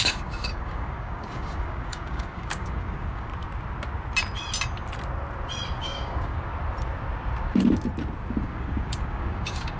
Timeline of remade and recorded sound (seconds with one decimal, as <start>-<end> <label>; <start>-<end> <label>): 0.0-3.3 remade; 3.3-5.8 recorded; 5.8-6.5 remade; 6.5-8.4 recorded; 8.4-9.8 remade